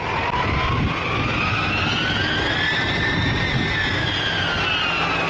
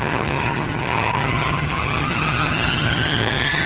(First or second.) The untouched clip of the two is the first